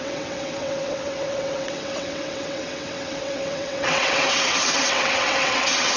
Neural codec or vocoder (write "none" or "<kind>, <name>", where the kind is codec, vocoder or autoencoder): vocoder, WaveNeXt